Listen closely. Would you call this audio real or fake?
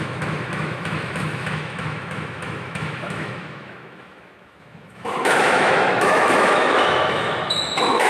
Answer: fake